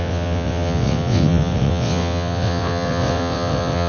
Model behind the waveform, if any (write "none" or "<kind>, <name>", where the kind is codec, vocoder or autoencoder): vocoder, WaveNeXt